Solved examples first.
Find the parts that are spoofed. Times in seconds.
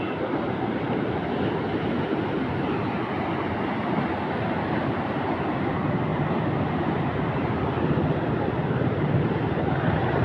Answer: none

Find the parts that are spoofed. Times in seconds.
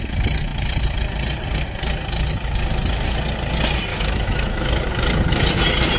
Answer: 3.9-4.7 (autoencoder, DAC-VAE)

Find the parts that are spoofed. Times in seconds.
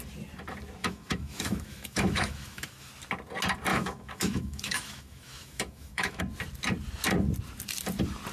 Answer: 0.8-2.9 (autoencoder, DAC-VAE); 3.7-6.2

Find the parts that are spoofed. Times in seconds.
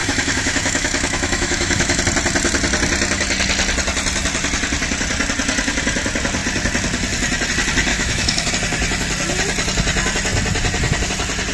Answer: 0.0-2.0 (autoencoder, DAC-VAE); 7.9-8.5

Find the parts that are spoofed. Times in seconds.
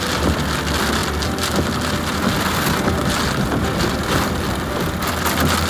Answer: none